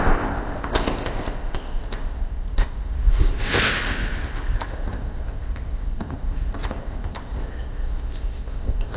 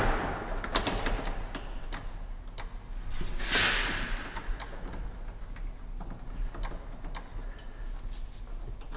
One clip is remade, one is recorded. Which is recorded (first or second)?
second